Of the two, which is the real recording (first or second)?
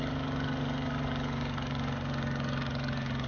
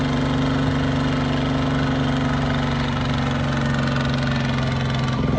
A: second